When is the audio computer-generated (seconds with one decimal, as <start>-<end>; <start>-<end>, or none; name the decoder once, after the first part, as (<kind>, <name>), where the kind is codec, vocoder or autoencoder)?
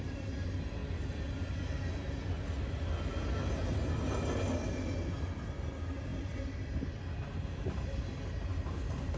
6.1-6.8 (vocoder, BigVGAN v2)